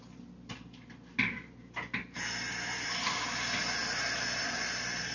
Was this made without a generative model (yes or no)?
yes